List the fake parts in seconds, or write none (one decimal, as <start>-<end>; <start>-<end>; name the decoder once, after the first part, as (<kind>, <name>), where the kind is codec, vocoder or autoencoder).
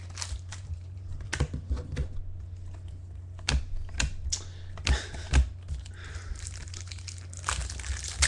0.5-1.3 (vocoder, BigVGAN v2)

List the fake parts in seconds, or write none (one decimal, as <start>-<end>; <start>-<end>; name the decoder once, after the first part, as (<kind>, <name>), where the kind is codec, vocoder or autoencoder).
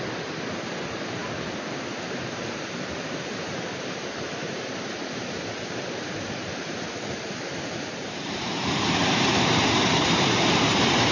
0.0-1.2 (vocoder, BigVGAN v2); 1.9-11.1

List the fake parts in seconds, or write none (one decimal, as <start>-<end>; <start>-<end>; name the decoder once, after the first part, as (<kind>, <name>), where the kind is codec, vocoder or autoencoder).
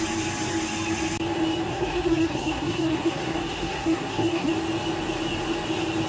1.7-4.5 (codec, SNAC)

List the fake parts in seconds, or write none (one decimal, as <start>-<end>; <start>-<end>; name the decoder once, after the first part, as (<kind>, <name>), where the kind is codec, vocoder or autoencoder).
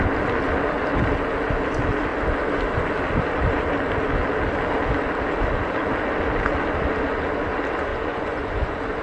7.9-9.0 (vocoder, Vocos)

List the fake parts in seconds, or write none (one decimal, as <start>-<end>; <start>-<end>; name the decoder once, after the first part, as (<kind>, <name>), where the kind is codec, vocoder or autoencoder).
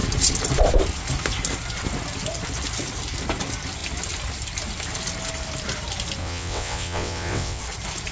6.2-7.6 (vocoder, WaveNeXt)